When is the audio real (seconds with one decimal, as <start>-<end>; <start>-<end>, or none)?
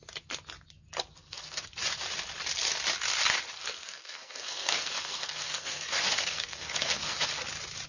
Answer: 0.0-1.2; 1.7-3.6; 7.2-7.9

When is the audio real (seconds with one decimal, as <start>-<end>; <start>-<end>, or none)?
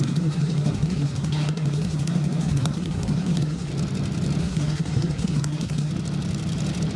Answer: 3.7-4.4; 5.9-7.0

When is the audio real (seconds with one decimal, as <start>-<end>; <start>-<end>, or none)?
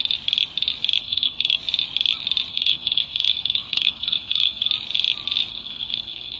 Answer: 0.0-1.0; 1.6-2.5; 4.7-5.5